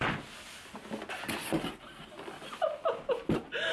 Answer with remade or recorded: recorded